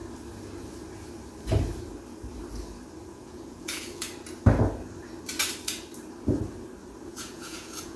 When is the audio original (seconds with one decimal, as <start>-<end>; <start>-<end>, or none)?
0.0-3.0; 4.1-7.1